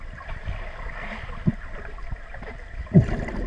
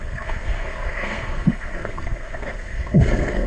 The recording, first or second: first